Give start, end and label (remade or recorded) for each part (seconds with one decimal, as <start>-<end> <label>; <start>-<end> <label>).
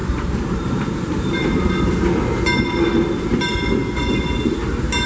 0.0-1.7 remade; 1.7-5.1 recorded